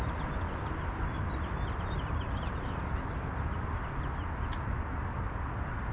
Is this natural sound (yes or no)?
yes